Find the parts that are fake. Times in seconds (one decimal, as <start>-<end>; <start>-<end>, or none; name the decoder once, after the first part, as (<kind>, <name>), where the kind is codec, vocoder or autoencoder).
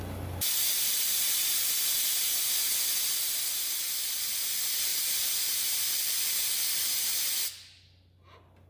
4.9-6.2 (vocoder, BigVGAN v2)